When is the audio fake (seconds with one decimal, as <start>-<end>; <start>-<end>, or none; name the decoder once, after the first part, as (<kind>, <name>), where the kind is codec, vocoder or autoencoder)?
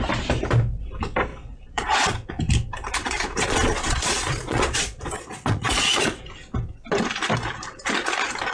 1.3-2.3 (vocoder, Vocos); 3.0-6.2